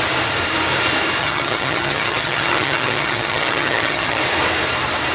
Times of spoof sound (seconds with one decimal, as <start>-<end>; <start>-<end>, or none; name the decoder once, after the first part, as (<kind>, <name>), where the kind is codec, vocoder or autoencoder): 1.2-4.2 (vocoder, HiFi-GAN)